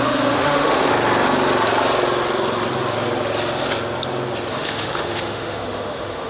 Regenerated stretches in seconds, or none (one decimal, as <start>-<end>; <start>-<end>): 0.0-0.9; 4.5-6.3